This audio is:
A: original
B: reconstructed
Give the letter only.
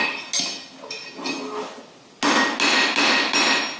A